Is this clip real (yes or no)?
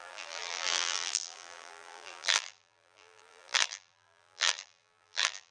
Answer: no